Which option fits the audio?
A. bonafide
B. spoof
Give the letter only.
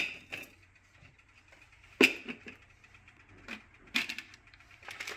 A